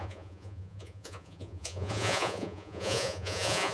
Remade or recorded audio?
remade